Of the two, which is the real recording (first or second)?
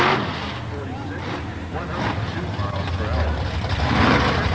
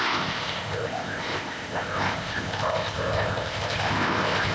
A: first